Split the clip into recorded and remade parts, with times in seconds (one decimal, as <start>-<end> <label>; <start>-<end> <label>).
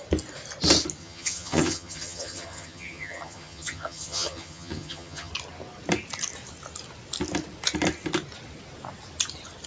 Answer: 0.0-1.0 recorded; 1.0-5.3 remade; 5.3-9.7 recorded